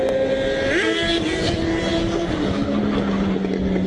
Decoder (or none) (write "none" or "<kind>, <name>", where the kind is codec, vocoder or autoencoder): none